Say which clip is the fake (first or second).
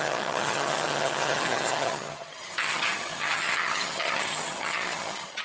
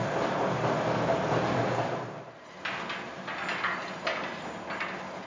first